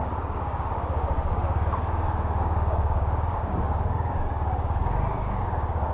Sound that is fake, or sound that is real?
fake